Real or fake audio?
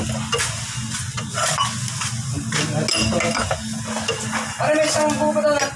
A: real